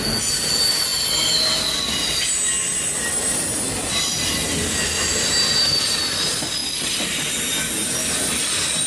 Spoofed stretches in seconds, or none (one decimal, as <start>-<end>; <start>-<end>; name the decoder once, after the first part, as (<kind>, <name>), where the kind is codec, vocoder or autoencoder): none